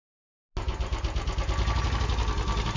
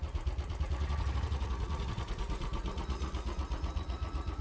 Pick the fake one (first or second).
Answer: second